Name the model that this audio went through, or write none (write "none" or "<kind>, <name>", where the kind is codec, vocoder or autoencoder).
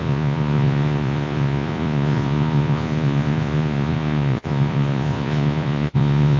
vocoder, Vocos